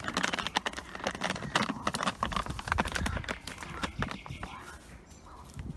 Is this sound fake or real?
real